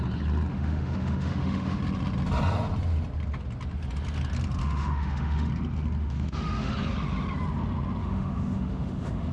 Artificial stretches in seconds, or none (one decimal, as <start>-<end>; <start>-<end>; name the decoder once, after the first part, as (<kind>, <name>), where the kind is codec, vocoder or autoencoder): 0.5-1.8 (autoencoder, DAC-VAE); 4.6-5.5; 6.0-6.7; 8.0-9.3